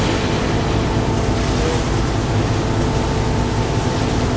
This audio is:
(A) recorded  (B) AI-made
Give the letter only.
A